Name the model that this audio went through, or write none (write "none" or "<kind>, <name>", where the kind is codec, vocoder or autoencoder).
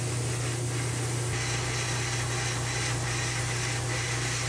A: none